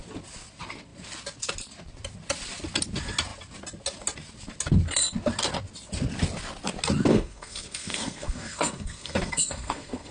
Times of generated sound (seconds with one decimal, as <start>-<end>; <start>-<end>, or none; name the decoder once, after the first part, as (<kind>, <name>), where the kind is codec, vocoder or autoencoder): 7.1-10.1 (codec, SNAC)